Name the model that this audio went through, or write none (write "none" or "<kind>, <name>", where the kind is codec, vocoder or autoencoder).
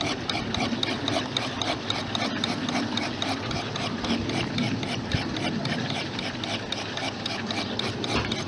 none